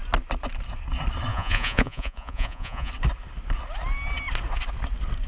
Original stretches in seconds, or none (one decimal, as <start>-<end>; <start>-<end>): 0.0-1.3; 2.9-5.3